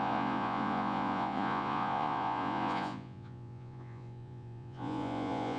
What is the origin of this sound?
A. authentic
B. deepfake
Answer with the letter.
B